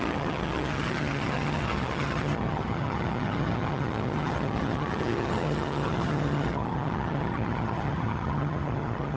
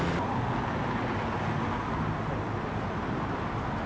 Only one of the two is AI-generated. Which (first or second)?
first